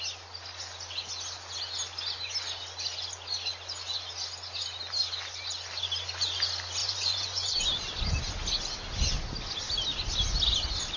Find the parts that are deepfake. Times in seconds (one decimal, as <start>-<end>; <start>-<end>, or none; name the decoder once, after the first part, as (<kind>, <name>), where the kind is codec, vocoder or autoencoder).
6.8-7.6 (vocoder, Vocos)